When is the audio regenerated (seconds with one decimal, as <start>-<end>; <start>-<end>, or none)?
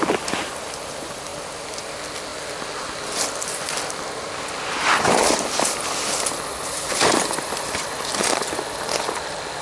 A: none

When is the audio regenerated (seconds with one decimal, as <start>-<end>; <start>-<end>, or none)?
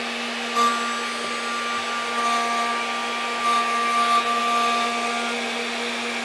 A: none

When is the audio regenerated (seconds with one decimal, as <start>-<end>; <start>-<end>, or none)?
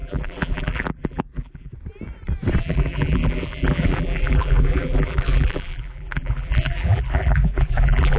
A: 0.0-1.7; 2.6-8.2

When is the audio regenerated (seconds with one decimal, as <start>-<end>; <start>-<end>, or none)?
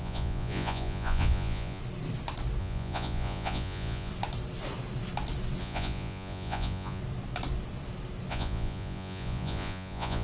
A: 0.0-1.8; 2.6-4.1; 5.6-7.0; 8.3-10.2